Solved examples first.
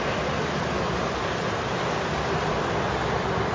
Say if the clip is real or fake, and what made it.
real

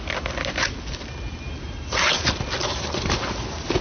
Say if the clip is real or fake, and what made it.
real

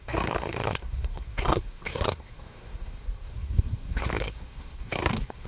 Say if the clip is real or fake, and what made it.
fake, codec, SNAC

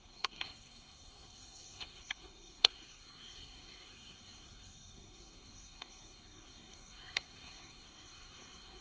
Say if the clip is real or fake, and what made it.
fake, codec, SNAC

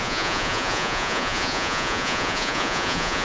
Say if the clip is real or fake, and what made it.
fake, vocoder, Vocos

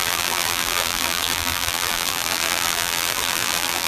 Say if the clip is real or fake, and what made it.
fake, vocoder, BigVGAN v2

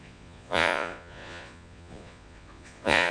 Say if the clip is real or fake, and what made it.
fake, vocoder, Vocos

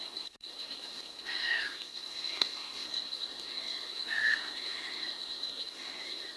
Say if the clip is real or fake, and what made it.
fake, codec, SNAC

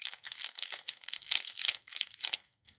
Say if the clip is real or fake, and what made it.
fake, codec, SNAC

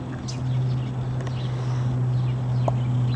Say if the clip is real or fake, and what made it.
real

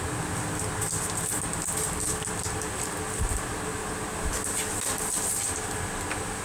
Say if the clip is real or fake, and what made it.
real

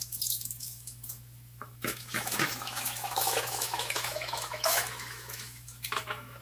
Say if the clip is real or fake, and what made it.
fake, autoencoder, DAC-VAE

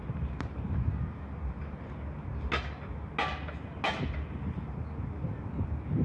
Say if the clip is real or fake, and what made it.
real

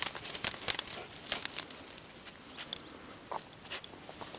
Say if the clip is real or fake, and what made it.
real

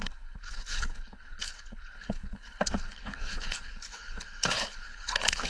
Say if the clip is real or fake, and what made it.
fake, codec, HILCodec